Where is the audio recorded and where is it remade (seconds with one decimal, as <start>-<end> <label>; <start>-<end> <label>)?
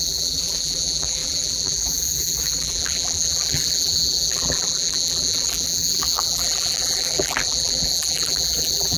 0.0-9.0 remade